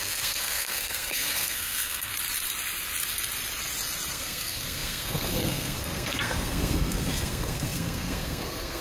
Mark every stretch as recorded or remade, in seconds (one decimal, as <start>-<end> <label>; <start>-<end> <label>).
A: 0.0-2.1 remade; 2.1-4.1 recorded; 4.1-8.8 remade